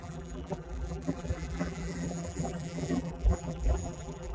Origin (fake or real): fake